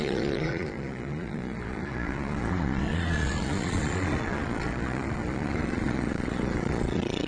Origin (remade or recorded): remade